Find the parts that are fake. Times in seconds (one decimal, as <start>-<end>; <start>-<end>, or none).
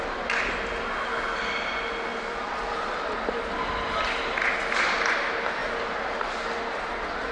2.1-3.2